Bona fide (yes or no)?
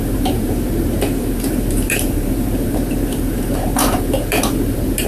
no